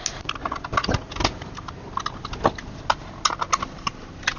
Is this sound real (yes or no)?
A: yes